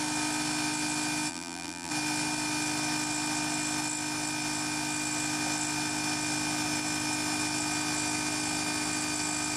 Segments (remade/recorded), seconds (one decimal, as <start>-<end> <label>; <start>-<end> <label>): 0.0-1.3 recorded; 1.3-1.9 remade; 1.9-9.6 recorded